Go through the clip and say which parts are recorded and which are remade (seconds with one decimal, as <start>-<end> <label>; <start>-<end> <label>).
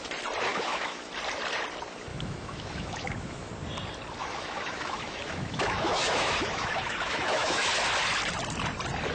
0.0-0.5 recorded; 0.5-1.1 remade; 1.1-2.1 recorded; 2.1-3.5 remade; 3.5-4.2 recorded; 4.2-7.7 remade; 7.7-9.1 recorded